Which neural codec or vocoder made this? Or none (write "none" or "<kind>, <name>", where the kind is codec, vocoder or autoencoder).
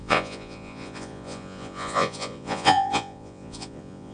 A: vocoder, Vocos